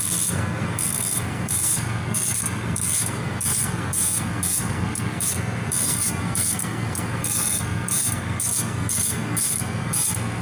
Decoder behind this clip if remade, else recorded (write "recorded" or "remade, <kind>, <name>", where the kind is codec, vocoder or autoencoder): remade, codec, SNAC